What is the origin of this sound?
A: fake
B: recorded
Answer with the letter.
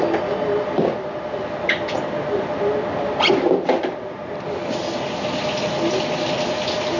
B